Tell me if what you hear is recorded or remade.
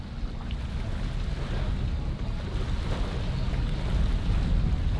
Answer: recorded